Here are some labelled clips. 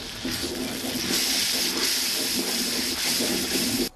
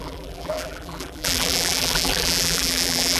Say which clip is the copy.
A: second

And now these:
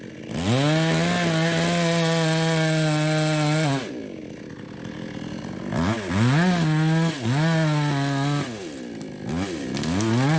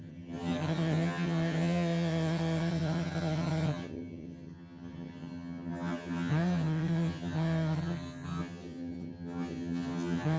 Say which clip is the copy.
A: second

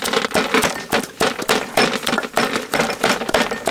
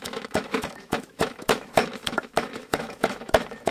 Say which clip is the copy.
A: second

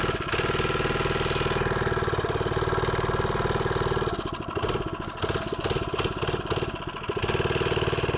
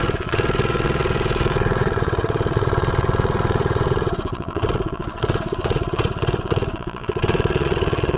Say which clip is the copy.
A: second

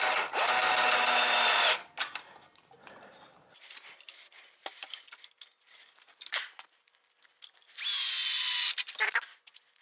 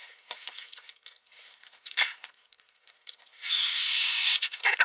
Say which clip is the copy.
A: second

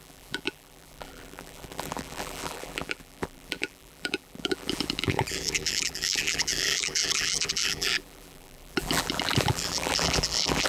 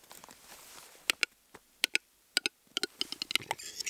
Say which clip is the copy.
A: first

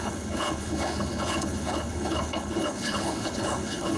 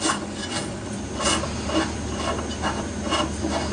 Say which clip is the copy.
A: first